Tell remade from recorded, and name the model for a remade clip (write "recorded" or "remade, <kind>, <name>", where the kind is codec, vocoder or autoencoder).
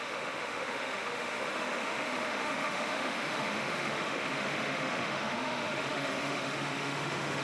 remade, autoencoder, DAC-VAE